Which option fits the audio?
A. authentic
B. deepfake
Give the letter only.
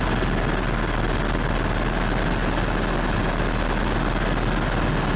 A